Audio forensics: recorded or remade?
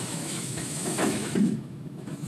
remade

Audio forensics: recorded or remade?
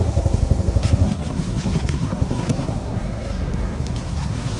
remade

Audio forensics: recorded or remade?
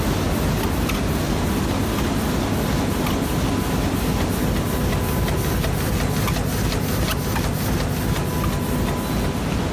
recorded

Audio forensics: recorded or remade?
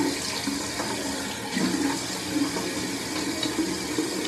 recorded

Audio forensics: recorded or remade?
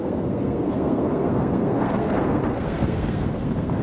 remade